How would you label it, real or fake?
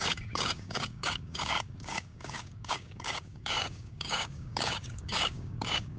fake